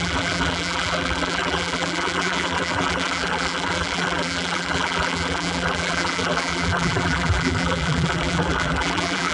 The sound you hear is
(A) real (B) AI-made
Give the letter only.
B